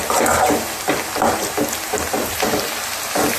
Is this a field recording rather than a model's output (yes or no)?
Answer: yes